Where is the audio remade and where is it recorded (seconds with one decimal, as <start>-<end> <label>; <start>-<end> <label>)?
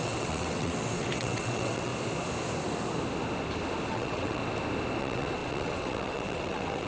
0.0-1.9 remade; 1.9-3.9 recorded; 3.9-4.4 remade; 4.4-5.0 recorded; 5.0-6.9 remade